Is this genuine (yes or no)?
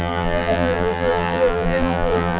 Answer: no